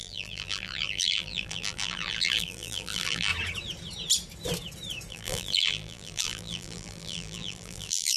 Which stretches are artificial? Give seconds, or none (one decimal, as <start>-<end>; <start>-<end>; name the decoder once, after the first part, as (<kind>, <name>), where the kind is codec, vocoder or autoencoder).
0.0-3.3 (vocoder, BigVGAN v2); 5.1-8.2